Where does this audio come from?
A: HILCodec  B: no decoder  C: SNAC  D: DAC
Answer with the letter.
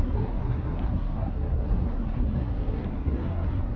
C